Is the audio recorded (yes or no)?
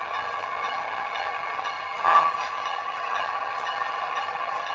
no